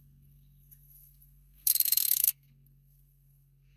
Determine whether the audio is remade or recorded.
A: remade